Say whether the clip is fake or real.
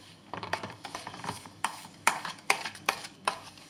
fake